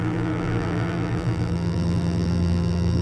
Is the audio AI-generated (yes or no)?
yes